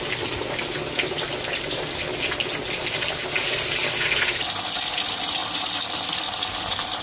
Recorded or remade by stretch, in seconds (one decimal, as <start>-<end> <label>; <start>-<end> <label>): 0.0-5.4 recorded; 5.4-6.2 remade; 6.2-7.0 recorded